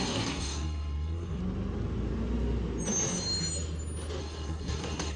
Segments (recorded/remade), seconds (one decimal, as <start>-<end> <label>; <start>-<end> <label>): 0.0-1.4 remade; 1.4-4.2 recorded; 4.2-5.2 remade